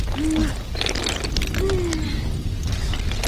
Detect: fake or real real